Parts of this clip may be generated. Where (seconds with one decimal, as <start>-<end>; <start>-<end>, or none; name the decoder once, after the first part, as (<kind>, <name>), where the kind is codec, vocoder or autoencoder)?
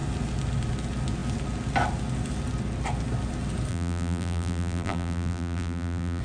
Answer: 3.7-6.2 (vocoder, BigVGAN v2)